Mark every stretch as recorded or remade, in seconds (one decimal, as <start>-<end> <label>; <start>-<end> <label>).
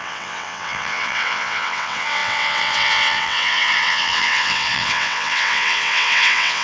0.0-6.6 remade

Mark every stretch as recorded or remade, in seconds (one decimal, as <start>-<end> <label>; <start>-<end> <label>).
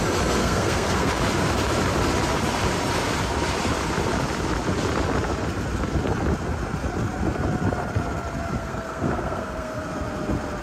0.0-0.4 recorded; 0.4-1.1 remade; 1.1-8.6 recorded; 8.6-9.9 remade; 9.9-10.6 recorded